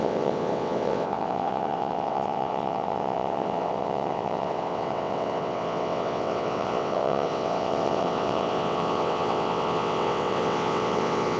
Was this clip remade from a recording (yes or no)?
yes